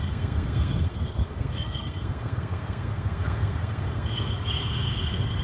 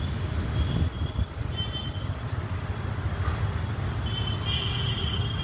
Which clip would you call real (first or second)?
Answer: second